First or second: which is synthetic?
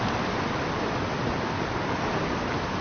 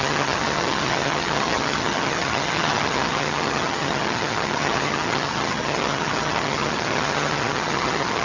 second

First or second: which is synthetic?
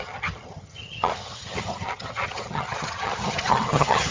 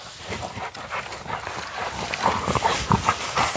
first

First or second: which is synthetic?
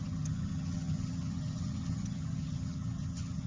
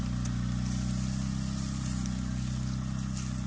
first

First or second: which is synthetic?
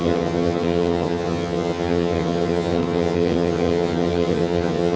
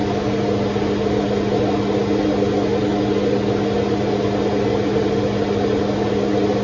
first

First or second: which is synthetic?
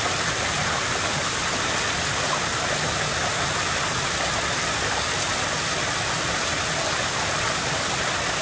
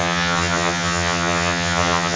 second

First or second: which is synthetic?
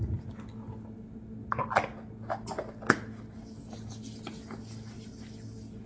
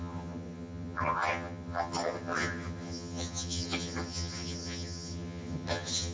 second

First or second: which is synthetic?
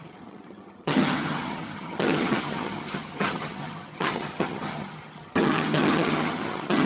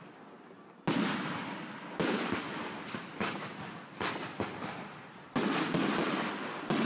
first